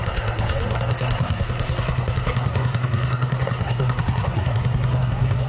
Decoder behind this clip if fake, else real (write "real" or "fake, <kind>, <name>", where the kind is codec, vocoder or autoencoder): fake, codec, SNAC